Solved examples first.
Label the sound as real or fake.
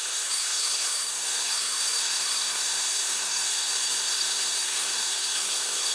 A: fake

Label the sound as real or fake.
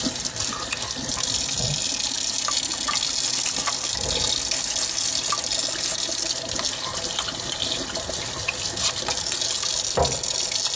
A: real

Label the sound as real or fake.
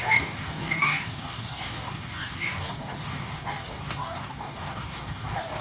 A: fake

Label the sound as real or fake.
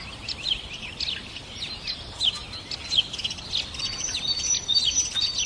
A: real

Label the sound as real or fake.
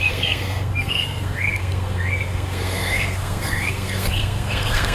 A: fake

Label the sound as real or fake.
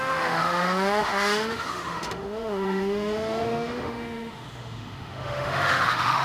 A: fake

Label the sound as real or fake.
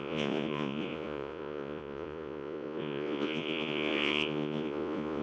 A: fake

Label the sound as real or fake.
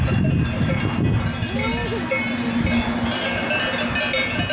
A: real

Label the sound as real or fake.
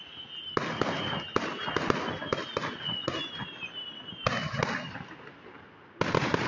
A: real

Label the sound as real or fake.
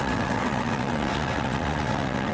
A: fake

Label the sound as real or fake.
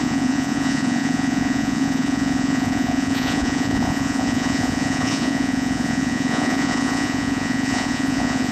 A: fake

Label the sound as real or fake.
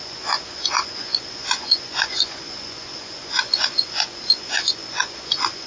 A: fake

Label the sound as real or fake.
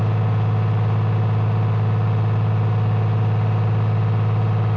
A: real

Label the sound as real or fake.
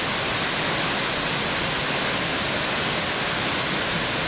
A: real